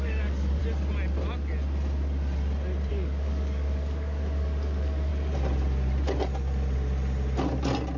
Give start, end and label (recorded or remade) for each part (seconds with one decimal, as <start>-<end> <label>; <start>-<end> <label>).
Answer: 0.0-0.6 remade; 0.6-2.9 recorded; 2.9-5.1 remade; 5.1-8.0 recorded